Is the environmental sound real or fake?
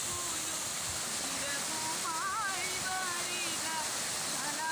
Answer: real